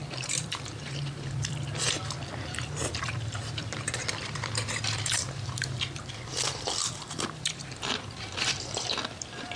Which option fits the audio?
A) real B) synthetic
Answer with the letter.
B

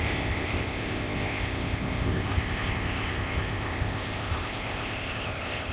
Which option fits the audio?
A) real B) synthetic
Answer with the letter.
B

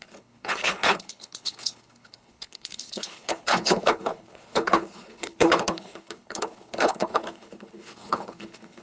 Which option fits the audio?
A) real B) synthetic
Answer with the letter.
B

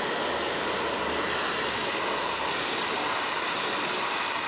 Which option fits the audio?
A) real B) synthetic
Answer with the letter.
B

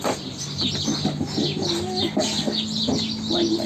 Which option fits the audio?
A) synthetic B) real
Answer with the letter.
B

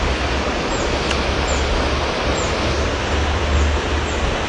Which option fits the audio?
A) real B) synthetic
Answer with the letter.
A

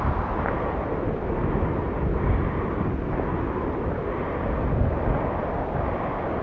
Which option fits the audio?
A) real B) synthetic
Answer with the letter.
A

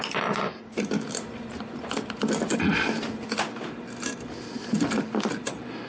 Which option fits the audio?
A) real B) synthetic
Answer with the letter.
A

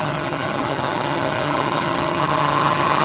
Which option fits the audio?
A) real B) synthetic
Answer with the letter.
B